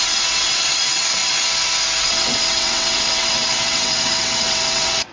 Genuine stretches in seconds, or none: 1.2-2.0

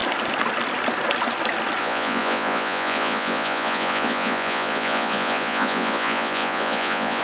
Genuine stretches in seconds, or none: 0.0-1.8

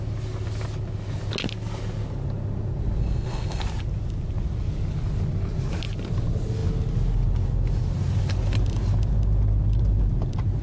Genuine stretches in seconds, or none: 0.0-3.0; 3.6-10.6

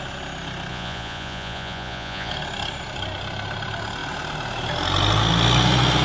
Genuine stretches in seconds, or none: 0.0-0.7; 2.3-6.0

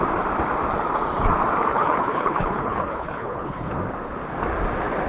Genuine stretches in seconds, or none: 0.0-1.7; 3.7-5.1

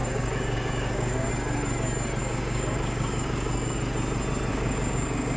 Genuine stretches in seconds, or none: 1.3-2.2; 3.8-4.5